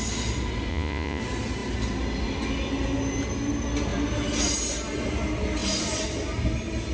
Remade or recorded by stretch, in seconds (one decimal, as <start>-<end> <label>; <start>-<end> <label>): 0.0-0.7 recorded; 0.7-1.2 remade; 1.2-6.9 recorded